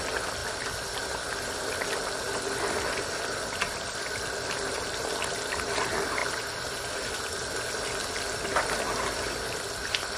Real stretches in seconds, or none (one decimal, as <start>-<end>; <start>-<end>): 0.0-0.4; 2.0-10.2